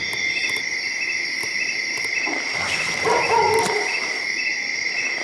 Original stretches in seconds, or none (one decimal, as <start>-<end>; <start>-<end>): 0.0-1.4; 3.9-5.2